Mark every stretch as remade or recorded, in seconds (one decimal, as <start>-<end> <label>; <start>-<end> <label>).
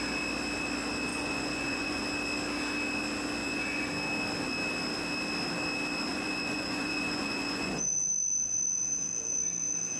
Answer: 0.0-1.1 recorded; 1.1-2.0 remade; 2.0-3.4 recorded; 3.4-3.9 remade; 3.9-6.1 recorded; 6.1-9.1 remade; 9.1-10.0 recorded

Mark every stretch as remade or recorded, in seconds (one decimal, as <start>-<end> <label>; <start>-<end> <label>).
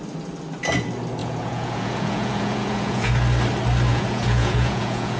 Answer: 0.0-1.2 recorded; 1.2-3.1 remade; 3.1-3.9 recorded; 3.9-5.2 remade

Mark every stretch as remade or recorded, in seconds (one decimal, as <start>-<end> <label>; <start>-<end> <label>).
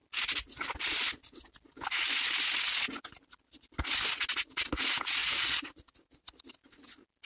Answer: 0.0-5.2 recorded; 5.2-6.4 remade; 6.4-7.2 recorded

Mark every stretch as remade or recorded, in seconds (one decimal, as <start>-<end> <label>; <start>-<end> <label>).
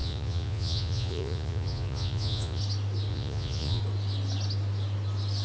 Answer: 0.0-2.6 remade; 2.6-3.1 recorded; 3.1-3.8 remade; 3.8-5.4 recorded